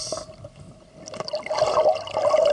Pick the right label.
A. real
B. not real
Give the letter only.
A